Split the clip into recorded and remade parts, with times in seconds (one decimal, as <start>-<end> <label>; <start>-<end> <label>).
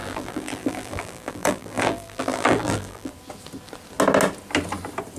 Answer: 0.0-3.1 remade; 3.1-5.2 recorded